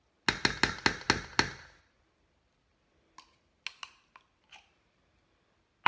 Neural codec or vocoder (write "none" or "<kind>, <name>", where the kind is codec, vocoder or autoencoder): none